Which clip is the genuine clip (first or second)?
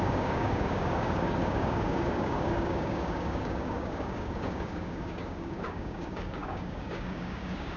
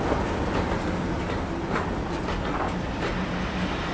second